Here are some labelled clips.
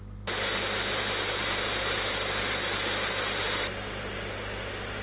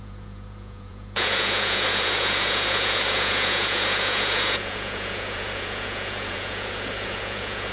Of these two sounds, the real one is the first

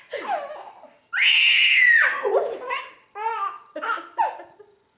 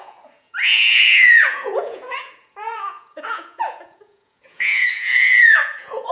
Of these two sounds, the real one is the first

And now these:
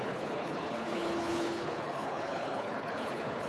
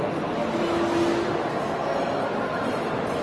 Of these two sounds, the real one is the second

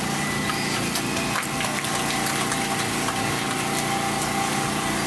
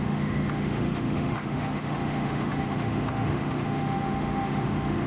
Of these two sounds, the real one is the first